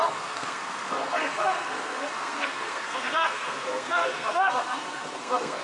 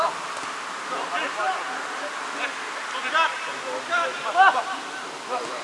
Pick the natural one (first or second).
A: second